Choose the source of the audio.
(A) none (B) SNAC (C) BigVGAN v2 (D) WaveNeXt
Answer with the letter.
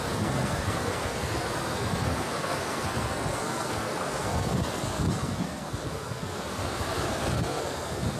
B